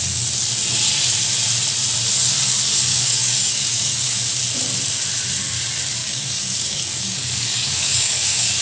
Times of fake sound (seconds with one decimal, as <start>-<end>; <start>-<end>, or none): 2.9-4.3; 6.0-8.6